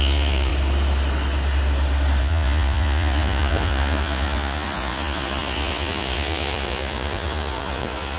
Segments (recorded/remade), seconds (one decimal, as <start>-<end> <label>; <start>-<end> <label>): 0.0-0.5 remade; 0.5-2.2 recorded; 2.2-8.2 remade